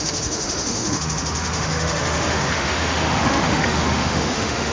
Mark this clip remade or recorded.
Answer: remade